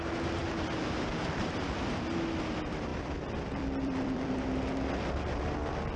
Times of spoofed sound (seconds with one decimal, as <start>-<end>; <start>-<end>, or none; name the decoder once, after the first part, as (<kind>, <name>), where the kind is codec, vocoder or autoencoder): 2.9-4.5 (vocoder, BigVGAN v2)